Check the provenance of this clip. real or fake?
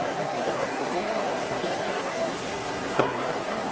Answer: fake